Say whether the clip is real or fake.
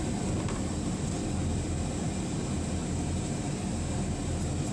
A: real